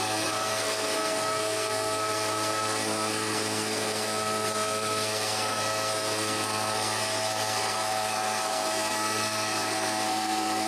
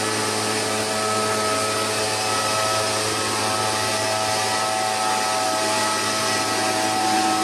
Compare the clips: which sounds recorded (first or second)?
second